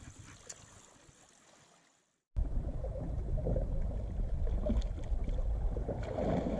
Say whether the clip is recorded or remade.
recorded